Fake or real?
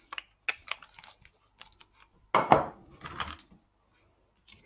real